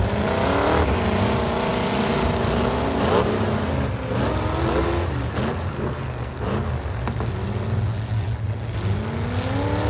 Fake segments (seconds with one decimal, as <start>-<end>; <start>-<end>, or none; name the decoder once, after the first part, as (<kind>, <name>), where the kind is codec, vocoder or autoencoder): 5.7-6.4 (codec, SNAC)